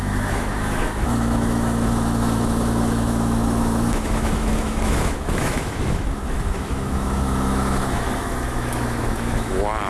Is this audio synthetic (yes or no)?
yes